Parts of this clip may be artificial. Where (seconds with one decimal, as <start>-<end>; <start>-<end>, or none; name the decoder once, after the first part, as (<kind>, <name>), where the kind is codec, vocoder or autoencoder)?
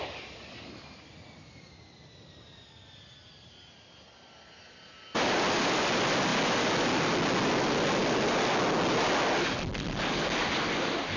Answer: none